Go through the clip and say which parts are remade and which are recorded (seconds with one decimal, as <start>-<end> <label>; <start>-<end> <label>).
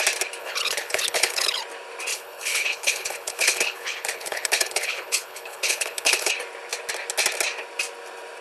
0.0-0.4 recorded; 0.4-1.6 remade; 1.6-2.1 recorded; 2.1-6.3 remade; 6.3-8.4 recorded